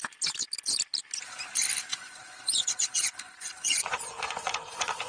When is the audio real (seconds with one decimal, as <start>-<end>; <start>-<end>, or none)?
0.0-1.9